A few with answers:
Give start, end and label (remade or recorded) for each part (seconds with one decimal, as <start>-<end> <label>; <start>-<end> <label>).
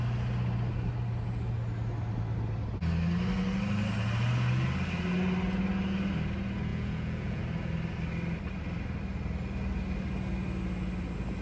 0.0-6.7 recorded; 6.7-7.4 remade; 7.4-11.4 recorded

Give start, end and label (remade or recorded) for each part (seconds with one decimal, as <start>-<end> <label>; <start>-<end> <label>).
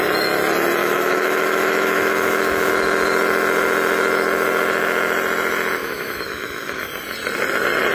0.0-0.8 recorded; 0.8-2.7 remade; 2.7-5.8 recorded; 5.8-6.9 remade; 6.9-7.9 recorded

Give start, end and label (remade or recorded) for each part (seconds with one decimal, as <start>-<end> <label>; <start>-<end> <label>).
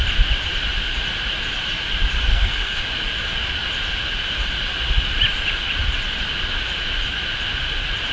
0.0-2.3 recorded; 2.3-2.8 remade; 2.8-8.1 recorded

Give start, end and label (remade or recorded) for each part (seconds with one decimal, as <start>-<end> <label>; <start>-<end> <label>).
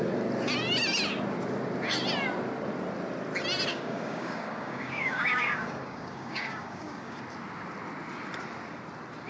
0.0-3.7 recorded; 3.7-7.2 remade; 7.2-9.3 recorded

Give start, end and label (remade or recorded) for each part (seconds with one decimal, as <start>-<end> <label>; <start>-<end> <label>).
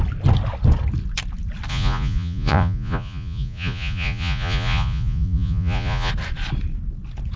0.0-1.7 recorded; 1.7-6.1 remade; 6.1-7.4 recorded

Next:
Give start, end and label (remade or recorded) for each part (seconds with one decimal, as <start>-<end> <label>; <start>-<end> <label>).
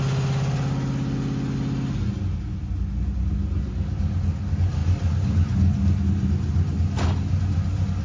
0.0-8.0 recorded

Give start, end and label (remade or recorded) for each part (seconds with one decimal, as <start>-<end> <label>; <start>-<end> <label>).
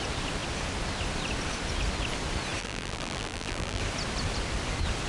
0.0-2.6 recorded; 2.6-3.8 remade; 3.8-5.1 recorded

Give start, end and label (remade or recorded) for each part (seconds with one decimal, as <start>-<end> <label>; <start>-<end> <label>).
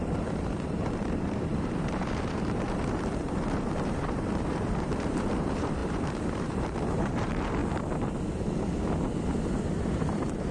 0.0-7.6 remade; 7.6-9.8 recorded; 9.8-10.5 remade